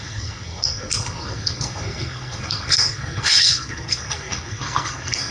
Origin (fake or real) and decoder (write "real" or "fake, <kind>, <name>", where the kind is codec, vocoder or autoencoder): fake, codec, SNAC